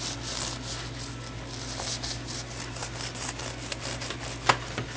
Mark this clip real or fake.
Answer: real